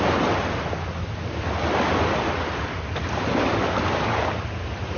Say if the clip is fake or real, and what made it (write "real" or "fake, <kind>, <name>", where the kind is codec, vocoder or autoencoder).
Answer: real